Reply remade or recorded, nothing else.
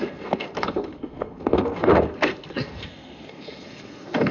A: remade